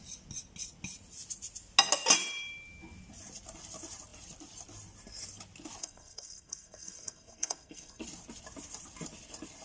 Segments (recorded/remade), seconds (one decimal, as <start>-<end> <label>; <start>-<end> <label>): 0.0-5.8 recorded; 5.8-8.0 remade; 8.0-9.6 recorded